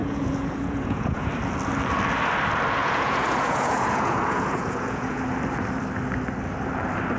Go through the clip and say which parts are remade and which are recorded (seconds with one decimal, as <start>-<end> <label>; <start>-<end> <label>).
0.0-1.3 remade; 1.3-2.8 recorded; 2.8-5.2 remade; 5.2-7.2 recorded